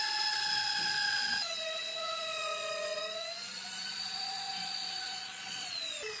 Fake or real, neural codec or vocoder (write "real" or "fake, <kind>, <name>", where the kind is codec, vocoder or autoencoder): fake, vocoder, Vocos